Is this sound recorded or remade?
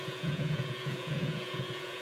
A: remade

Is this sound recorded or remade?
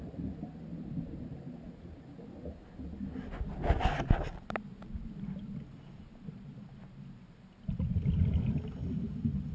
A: recorded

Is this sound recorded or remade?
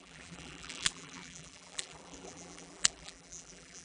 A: remade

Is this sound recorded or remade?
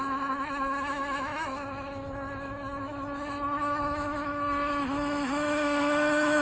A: remade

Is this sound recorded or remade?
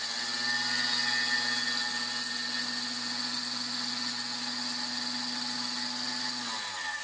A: recorded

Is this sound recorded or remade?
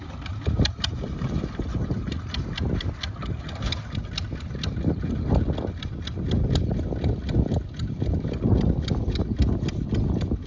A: recorded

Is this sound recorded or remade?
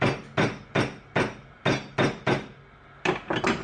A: recorded